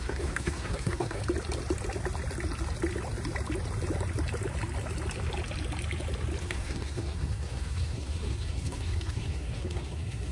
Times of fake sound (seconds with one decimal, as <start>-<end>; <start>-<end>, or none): 0.0-1.2; 6.4-10.3